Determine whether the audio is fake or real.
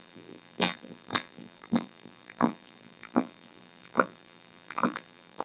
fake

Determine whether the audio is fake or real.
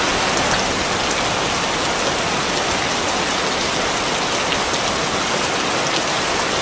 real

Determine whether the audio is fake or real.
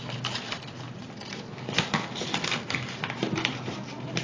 real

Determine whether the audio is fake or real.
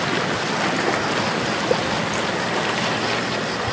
real